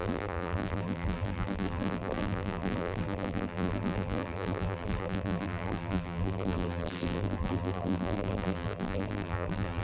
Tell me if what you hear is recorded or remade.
remade